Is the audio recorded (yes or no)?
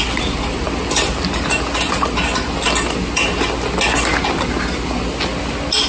yes